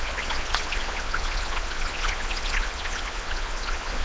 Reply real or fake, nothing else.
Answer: fake